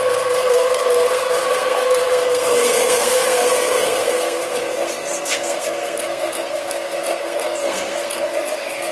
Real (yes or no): no